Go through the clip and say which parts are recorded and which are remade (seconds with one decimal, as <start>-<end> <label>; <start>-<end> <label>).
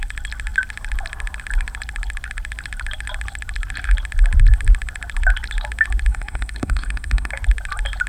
0.0-6.1 recorded; 6.1-7.3 remade; 7.3-8.1 recorded